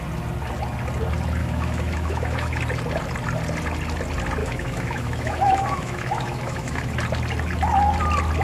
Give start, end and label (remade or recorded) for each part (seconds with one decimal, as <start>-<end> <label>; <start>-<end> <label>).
0.0-1.4 recorded; 1.4-2.6 remade; 2.6-4.4 recorded; 4.4-6.9 remade; 6.9-8.4 recorded